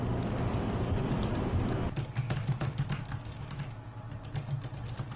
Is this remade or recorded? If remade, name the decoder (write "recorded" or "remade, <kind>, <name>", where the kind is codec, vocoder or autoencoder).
recorded